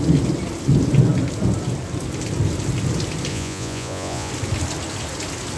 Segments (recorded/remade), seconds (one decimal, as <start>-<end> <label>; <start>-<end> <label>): 0.0-3.3 recorded; 3.3-4.3 remade; 4.3-5.6 recorded